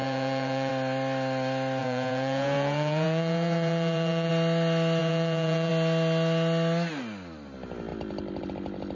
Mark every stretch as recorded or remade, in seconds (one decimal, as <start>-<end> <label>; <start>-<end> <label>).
0.0-0.7 remade; 0.7-1.8 recorded; 1.8-4.3 remade; 4.3-5.0 recorded; 5.0-5.7 remade; 5.7-8.9 recorded

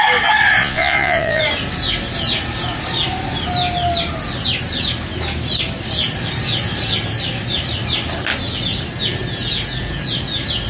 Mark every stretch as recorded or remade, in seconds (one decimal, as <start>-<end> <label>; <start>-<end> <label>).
0.0-0.6 recorded; 0.6-1.4 remade; 1.4-10.7 recorded

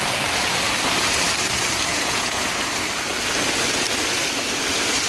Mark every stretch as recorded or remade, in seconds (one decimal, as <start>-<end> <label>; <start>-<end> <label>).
0.0-1.9 recorded; 1.9-2.5 remade; 2.5-5.1 recorded